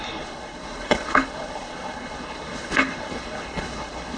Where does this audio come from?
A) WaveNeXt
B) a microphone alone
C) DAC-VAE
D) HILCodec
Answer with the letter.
D